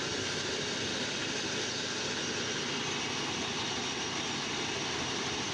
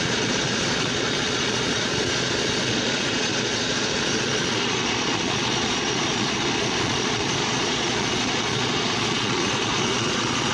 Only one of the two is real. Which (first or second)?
first